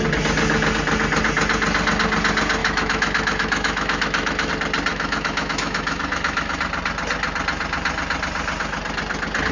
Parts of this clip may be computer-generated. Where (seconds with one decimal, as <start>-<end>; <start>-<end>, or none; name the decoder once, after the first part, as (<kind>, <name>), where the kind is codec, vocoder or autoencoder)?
2.6-4.5 (autoencoder, DAC-VAE); 4.9-6.6